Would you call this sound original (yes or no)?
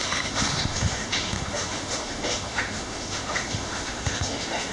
no